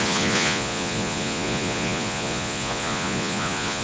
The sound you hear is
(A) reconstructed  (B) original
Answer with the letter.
A